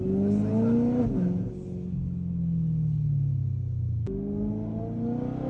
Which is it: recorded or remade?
recorded